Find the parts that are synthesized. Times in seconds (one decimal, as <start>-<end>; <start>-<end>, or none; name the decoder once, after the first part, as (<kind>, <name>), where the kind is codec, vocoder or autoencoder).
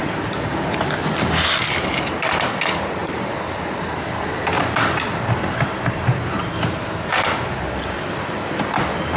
none